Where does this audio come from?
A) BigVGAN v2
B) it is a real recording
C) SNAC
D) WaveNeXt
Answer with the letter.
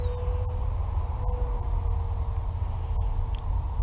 B